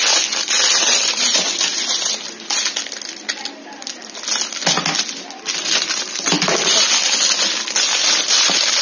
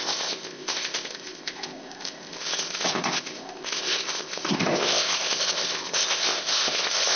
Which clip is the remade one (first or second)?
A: second